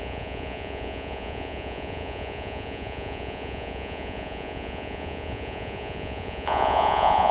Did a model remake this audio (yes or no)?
yes